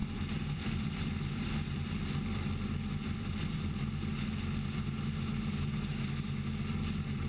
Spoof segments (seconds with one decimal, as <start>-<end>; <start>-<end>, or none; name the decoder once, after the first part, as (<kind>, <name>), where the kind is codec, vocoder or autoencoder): 0.0-3.8 (vocoder, BigVGAN v2)